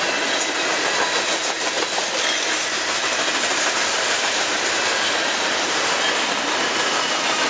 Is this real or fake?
real